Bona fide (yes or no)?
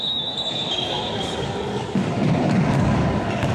no